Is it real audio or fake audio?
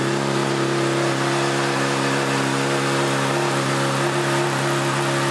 real